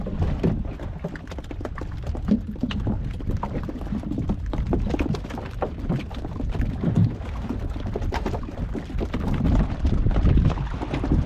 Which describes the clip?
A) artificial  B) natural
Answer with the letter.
B